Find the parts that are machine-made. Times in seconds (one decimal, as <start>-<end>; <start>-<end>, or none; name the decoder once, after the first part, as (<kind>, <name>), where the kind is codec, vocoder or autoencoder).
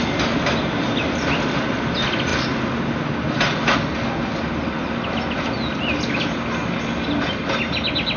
none